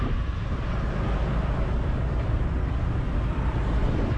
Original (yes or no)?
yes